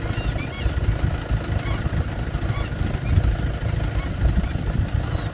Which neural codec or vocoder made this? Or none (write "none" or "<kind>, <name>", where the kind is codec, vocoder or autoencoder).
none